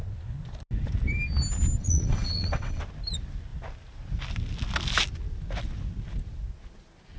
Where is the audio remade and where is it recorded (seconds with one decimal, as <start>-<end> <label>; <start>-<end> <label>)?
0.0-1.8 recorded; 1.8-2.8 remade; 2.8-7.2 recorded